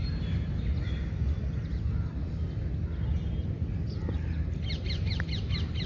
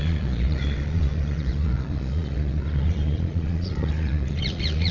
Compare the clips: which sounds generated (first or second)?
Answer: second